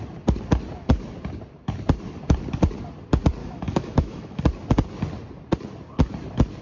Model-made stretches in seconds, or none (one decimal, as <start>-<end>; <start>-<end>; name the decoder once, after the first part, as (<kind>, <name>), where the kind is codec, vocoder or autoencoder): 3.4-4.4 (autoencoder, DAC-VAE)